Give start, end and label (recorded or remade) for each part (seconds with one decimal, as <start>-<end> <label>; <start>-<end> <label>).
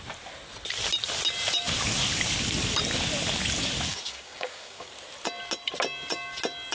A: 0.0-3.9 recorded; 3.9-4.9 remade; 4.9-6.7 recorded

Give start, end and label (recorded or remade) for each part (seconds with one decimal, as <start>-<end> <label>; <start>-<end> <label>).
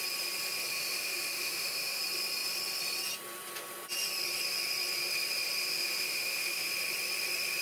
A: 0.0-0.7 recorded; 0.7-2.0 remade; 2.0-5.7 recorded; 5.7-6.7 remade; 6.7-7.6 recorded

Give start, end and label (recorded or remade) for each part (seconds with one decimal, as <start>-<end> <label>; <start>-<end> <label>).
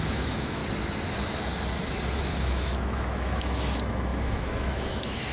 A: 0.0-0.6 remade; 0.6-2.2 recorded; 2.2-5.3 remade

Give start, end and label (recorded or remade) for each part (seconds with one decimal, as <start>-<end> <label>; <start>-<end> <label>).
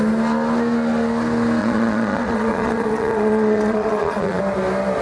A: 0.0-1.6 recorded; 1.6-4.4 remade; 4.4-5.0 recorded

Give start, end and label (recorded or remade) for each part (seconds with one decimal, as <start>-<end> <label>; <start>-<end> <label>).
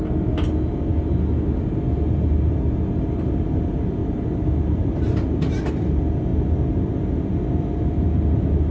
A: 0.0-4.0 recorded; 4.0-5.7 remade; 5.7-6.3 recorded; 6.3-7.4 remade; 7.4-8.7 recorded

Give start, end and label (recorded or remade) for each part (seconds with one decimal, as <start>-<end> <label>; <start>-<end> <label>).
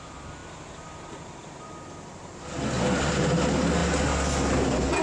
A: 0.0-5.0 recorded